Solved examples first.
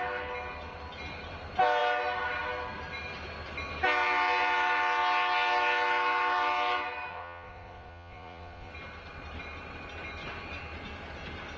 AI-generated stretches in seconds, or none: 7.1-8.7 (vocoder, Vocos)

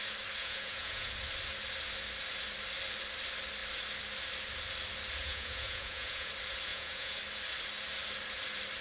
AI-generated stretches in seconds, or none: 0.4-1.1 (vocoder, Vocos); 5.2-6.3; 6.7-7.2